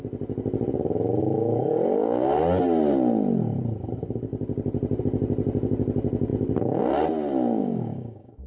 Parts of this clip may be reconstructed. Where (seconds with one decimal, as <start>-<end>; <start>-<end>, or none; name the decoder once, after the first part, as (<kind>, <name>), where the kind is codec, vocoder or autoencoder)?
1.2-2.4 (codec, DAC); 7.5-8.5